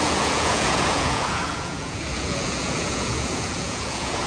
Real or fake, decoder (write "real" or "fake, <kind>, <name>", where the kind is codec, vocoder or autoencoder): fake, vocoder, Vocos